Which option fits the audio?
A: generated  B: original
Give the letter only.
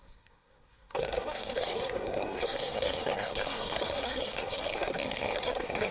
A